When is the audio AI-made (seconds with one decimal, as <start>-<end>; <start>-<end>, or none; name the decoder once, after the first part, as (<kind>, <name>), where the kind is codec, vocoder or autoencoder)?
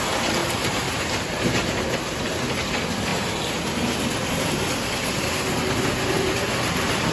0.4-2.2 (vocoder, BigVGAN v2)